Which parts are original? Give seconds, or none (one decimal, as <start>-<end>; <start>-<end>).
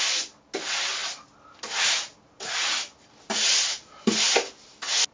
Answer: 0.0-5.1